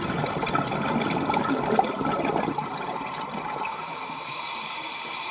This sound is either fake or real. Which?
real